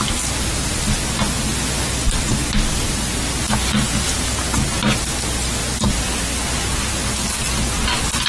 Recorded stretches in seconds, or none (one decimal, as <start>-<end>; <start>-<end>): 0.0-3.4; 4.4-8.3